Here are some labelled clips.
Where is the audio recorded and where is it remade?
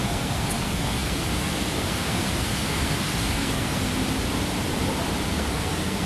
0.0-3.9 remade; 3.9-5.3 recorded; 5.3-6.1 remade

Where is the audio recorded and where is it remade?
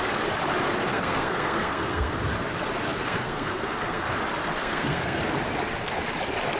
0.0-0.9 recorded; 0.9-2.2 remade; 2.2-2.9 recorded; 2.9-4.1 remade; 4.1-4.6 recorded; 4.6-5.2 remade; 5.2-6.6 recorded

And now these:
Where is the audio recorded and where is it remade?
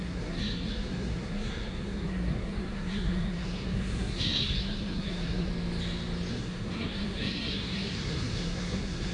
0.0-5.5 remade; 5.5-6.3 recorded; 6.3-9.1 remade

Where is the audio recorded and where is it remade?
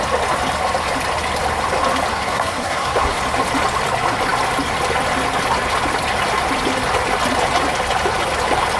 0.0-2.1 recorded; 2.1-3.2 remade; 3.2-8.8 recorded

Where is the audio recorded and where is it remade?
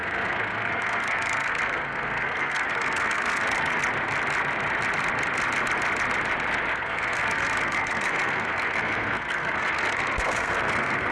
0.0-3.8 remade; 3.8-6.7 recorded; 6.7-11.1 remade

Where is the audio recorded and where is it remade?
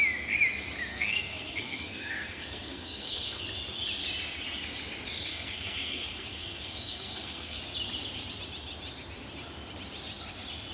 0.0-0.9 recorded; 0.9-3.4 remade; 3.4-5.3 recorded; 5.3-7.6 remade; 7.6-10.7 recorded